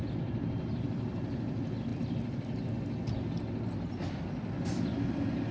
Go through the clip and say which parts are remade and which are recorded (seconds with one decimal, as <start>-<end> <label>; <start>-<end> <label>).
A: 0.0-5.5 recorded